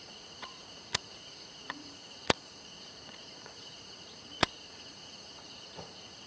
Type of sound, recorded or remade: remade